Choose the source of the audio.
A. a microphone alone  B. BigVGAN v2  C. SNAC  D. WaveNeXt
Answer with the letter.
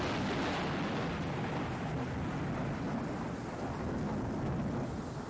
A